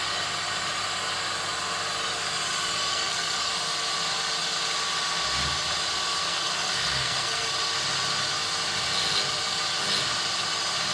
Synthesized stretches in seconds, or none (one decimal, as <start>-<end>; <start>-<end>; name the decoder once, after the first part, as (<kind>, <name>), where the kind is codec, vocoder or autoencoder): 2.9-3.5 (codec, SNAC); 6.2-7.5